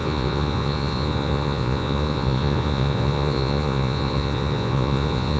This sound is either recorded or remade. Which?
remade